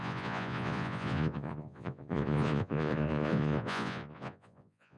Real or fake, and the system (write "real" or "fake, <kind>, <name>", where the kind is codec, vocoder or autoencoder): fake, vocoder, Vocos